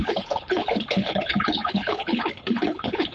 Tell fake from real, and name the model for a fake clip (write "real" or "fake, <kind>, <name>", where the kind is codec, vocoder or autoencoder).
fake, codec, HILCodec